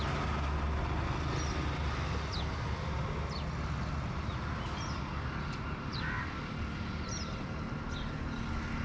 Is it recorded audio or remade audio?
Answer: recorded